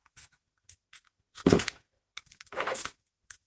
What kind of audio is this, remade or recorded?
remade